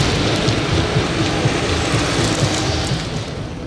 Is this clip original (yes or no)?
yes